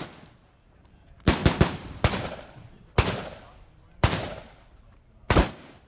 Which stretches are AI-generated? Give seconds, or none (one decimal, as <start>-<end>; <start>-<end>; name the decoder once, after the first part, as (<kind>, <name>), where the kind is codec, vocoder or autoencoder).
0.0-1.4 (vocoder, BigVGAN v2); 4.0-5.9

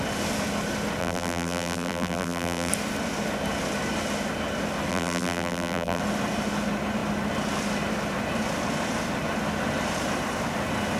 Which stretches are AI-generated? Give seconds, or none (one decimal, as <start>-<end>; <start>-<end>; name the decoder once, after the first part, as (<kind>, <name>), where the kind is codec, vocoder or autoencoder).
1.0-2.7 (vocoder, BigVGAN v2); 4.9-6.0

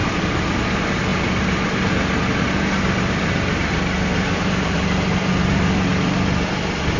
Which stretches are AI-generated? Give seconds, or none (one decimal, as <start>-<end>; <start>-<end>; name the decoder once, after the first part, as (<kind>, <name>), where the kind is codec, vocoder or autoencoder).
0.0-0.5 (vocoder, BigVGAN v2); 1.1-5.3